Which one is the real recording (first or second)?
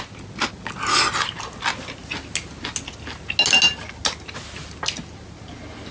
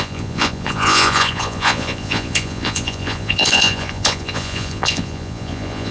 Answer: first